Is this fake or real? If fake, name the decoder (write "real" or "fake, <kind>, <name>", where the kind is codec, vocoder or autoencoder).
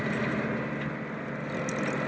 real